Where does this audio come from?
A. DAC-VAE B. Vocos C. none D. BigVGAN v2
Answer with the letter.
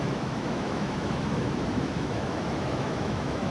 A